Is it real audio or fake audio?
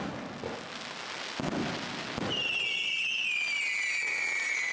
real